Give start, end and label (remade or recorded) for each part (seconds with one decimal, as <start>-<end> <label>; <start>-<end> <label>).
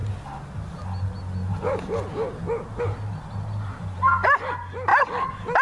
0.0-5.6 recorded